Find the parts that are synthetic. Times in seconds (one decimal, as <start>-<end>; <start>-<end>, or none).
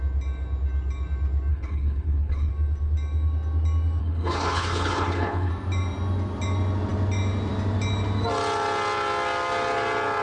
1.5-2.5; 4.0-5.5